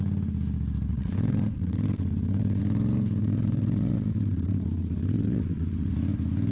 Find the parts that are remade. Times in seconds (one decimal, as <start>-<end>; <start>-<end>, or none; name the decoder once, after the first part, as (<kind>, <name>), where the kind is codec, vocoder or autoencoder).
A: 0.9-2.6 (vocoder, WaveNeXt); 3.2-5.9